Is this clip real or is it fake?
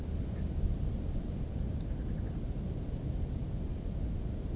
real